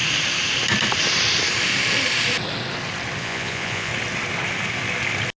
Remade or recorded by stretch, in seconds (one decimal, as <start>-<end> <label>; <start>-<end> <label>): 0.0-3.2 recorded; 3.2-3.9 remade; 3.9-5.4 recorded